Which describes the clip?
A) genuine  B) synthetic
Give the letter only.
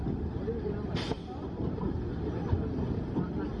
A